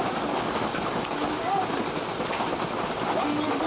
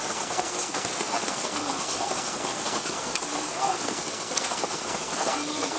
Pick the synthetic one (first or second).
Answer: second